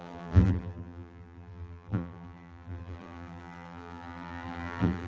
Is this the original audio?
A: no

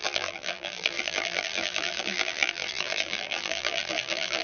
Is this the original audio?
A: no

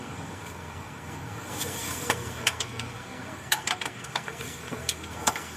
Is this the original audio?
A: no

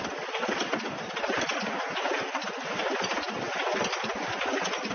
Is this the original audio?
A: yes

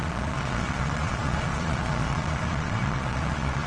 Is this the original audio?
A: no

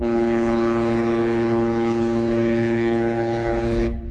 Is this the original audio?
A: no